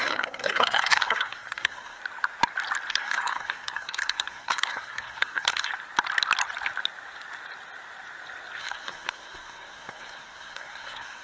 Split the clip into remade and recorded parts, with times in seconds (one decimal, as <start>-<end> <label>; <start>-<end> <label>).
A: 0.0-2.0 remade; 2.0-2.9 recorded; 2.9-5.7 remade; 5.7-8.6 recorded; 8.6-11.2 remade